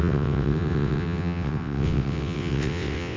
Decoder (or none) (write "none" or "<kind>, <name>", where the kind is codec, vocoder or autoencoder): vocoder, WaveNeXt